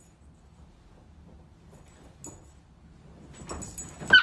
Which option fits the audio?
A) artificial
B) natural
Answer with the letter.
B